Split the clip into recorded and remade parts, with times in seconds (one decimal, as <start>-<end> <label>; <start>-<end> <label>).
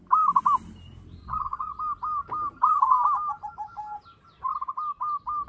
0.0-1.2 recorded; 1.2-1.8 remade; 1.8-5.5 recorded